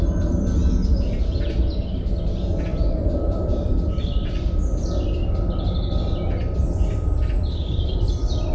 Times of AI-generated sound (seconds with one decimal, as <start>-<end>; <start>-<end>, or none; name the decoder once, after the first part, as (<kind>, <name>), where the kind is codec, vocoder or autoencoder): 2.7-3.6 (vocoder, BigVGAN v2); 7.6-8.1